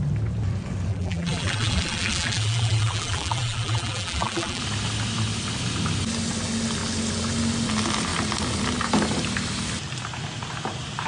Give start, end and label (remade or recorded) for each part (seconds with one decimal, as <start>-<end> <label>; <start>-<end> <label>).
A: 0.0-0.9 recorded; 0.9-4.6 remade; 4.6-11.1 recorded